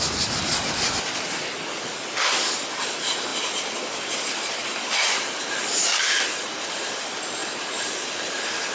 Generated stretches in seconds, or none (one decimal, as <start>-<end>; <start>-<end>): none